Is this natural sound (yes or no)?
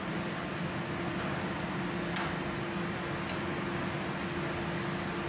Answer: yes